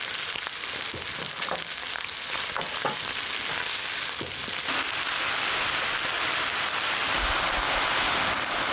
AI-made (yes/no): no